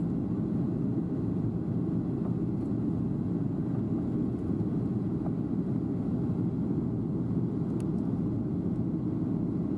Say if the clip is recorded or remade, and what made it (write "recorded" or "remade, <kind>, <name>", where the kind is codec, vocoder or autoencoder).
recorded